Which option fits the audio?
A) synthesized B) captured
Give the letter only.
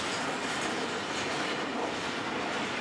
B